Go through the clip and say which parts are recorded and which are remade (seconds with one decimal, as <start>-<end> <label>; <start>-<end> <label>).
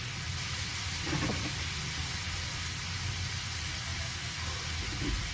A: 0.0-5.3 recorded